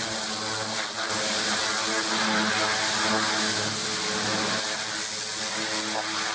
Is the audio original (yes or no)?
yes